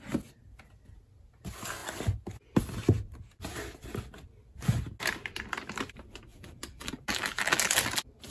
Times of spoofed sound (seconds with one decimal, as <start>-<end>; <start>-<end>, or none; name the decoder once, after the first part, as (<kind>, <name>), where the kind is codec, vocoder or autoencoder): 6.3-7.6 (vocoder, BigVGAN v2)